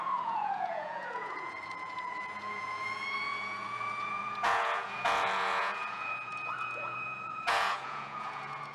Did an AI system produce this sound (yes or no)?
yes